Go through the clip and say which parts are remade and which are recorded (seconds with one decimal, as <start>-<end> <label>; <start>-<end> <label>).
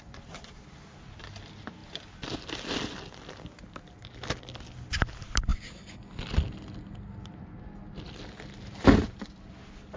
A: 0.0-10.0 recorded